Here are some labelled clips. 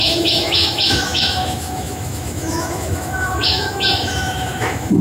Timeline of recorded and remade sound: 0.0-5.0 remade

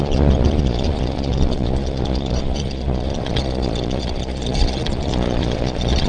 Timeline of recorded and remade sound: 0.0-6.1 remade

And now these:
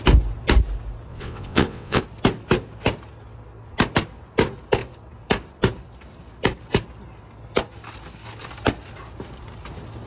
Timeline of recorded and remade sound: 0.0-1.1 recorded; 1.1-2.0 remade; 2.0-10.1 recorded